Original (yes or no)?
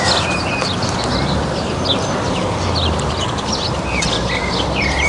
yes